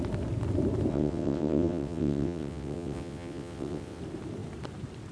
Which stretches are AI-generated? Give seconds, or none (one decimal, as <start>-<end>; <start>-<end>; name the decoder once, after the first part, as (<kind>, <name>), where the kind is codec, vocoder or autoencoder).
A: 0.9-4.0 (vocoder, WaveNeXt)